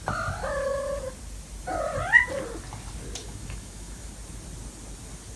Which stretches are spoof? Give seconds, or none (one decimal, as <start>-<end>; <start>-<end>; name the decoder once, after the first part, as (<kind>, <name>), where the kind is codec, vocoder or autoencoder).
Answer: 3.2-4.1 (autoencoder, DAC-VAE)